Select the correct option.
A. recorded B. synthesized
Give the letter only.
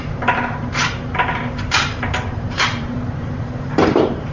B